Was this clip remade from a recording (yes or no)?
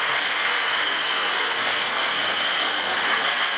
yes